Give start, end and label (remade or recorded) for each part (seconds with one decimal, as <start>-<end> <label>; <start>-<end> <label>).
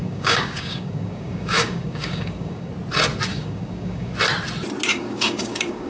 0.0-2.7 remade; 2.7-3.3 recorded; 3.3-4.1 remade; 4.1-4.9 recorded; 4.9-5.9 remade